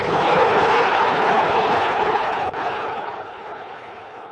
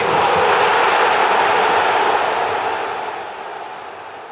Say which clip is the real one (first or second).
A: second